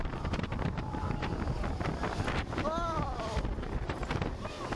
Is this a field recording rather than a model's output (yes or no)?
yes